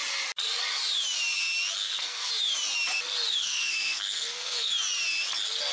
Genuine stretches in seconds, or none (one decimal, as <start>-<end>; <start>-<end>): 0.0-1.8; 2.3-3.4; 4.7-5.7